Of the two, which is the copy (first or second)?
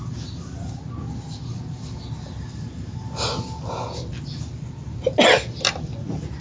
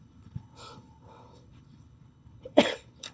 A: second